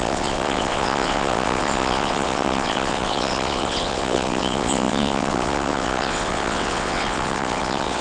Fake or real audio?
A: fake